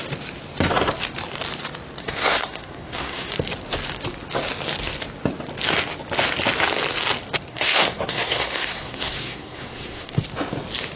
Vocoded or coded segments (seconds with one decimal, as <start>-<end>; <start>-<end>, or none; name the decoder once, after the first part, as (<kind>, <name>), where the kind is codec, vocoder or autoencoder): 2.0-3.3 (codec, SNAC); 7.5-10.2